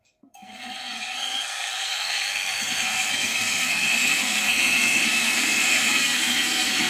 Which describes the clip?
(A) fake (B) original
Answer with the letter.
A